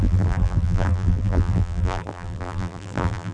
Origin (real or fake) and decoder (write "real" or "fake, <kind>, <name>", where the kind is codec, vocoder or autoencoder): fake, vocoder, BigVGAN v2